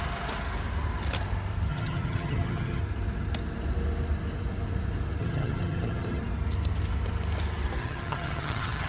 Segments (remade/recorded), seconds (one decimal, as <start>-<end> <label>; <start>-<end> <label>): 0.0-1.7 recorded; 1.7-2.8 remade; 2.8-5.2 recorded; 5.2-6.2 remade; 6.2-7.8 recorded; 7.8-8.9 remade